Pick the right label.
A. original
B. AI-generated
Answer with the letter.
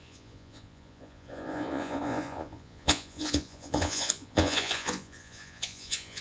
B